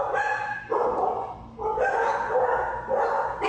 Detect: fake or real real